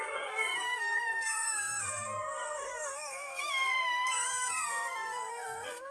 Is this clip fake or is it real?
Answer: fake